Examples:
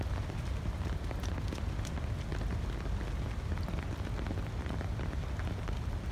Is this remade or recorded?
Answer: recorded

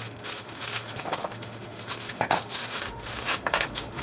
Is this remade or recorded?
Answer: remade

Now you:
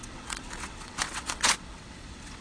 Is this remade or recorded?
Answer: remade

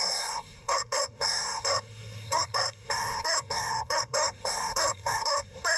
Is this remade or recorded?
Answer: remade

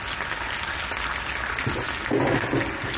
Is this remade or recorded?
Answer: recorded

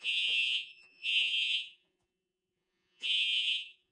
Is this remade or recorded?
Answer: remade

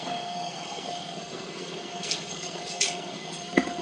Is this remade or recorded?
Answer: remade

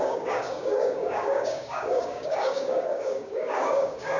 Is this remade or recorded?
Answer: remade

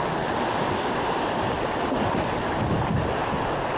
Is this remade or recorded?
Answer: recorded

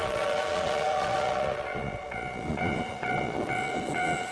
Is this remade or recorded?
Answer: remade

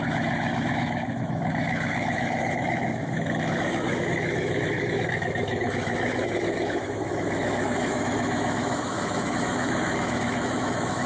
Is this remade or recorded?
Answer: remade